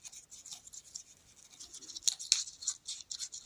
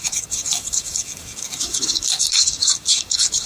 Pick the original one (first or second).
first